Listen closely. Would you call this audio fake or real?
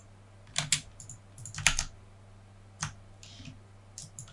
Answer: real